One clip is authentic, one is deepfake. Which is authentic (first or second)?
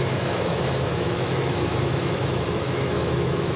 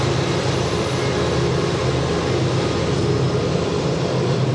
second